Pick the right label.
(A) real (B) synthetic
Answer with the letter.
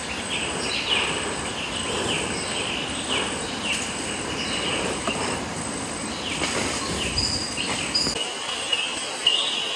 A